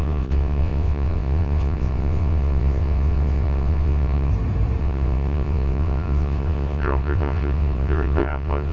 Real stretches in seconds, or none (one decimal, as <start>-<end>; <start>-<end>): 4.3-4.8